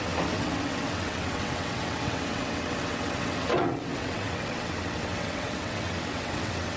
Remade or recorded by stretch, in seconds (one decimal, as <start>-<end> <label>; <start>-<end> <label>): 0.0-6.8 remade